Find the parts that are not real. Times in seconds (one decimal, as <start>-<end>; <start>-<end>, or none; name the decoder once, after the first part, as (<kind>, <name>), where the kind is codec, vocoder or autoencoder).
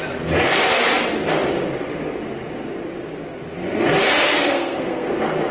4.3-5.1 (codec, SNAC)